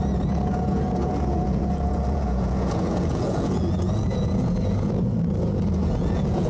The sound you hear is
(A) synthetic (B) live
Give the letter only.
A